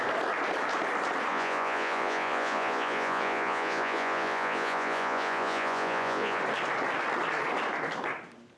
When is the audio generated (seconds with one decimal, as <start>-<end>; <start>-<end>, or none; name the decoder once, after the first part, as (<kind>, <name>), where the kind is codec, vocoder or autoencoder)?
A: 1.3-6.4 (vocoder, Vocos)